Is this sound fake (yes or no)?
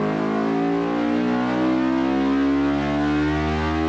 no